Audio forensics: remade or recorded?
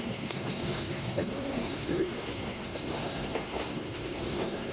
remade